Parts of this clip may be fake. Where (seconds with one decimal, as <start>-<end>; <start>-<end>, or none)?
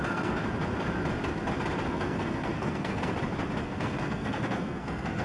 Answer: 0.0-0.4; 1.9-3.1; 3.6-5.2